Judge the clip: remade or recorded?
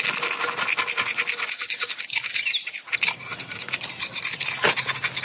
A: recorded